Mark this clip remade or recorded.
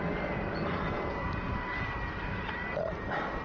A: recorded